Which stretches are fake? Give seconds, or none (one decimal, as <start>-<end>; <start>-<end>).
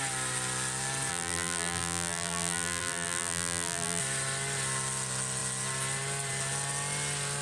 1.1-4.0